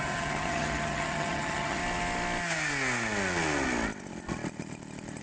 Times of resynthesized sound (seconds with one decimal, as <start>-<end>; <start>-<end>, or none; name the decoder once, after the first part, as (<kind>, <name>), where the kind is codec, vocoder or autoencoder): 0.0-1.8 (vocoder, HiFi-GAN)